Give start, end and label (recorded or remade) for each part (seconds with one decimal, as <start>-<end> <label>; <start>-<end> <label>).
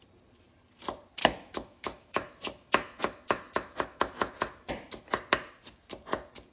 0.0-1.2 recorded; 1.2-4.7 remade; 4.7-6.5 recorded